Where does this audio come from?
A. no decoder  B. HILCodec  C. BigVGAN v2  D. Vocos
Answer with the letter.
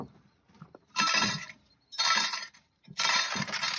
C